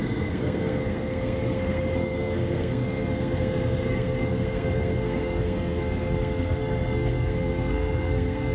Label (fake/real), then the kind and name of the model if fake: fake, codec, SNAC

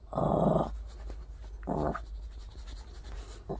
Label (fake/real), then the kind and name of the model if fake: real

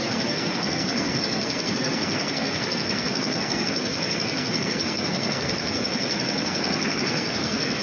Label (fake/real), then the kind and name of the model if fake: fake, codec, SNAC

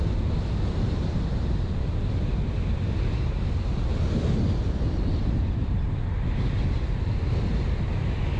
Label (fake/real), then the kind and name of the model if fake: real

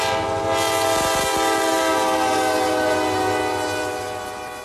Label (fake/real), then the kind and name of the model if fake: real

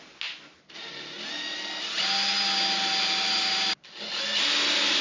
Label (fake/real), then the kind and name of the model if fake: real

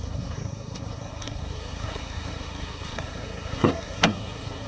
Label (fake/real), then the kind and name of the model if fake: fake, codec, SNAC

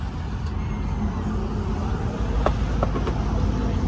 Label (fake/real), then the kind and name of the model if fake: real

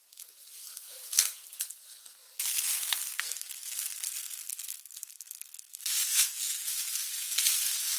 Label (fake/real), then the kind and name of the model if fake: fake, codec, SNAC